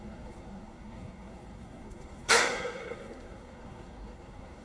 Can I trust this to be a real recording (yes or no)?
no